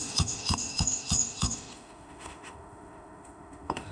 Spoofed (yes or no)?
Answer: yes